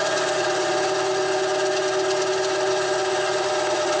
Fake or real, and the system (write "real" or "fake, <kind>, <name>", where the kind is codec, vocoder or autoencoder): real